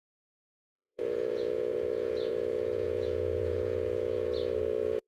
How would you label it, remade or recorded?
remade